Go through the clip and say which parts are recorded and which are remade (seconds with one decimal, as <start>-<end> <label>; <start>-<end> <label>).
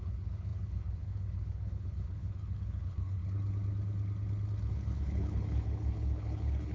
0.0-3.2 remade; 3.2-4.7 recorded; 4.7-6.7 remade